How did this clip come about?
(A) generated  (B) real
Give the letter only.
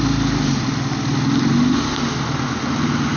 B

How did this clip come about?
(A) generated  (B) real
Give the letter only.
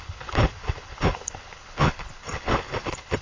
A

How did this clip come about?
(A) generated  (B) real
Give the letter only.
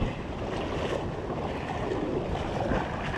B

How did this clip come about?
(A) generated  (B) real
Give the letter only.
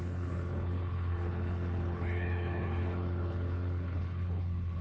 A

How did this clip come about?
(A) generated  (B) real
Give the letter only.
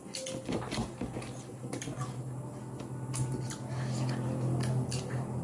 B